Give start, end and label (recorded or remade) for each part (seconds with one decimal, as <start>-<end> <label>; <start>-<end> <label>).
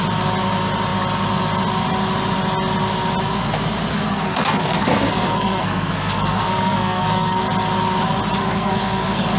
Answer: 0.0-3.9 recorded; 3.9-7.4 remade; 7.4-8.4 recorded; 8.4-9.4 remade